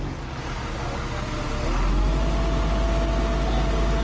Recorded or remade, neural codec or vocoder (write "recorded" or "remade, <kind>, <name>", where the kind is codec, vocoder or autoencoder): recorded